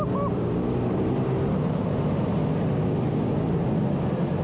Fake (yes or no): no